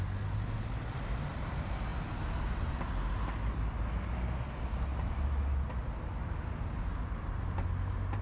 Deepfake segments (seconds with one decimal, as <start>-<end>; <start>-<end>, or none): none